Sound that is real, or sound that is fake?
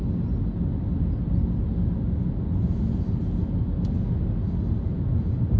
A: real